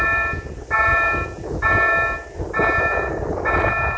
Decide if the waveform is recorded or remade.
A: recorded